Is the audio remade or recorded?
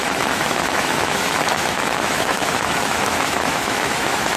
remade